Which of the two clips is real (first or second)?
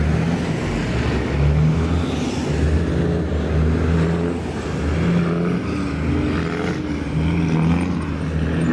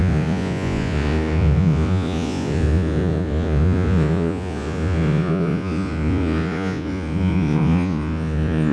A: first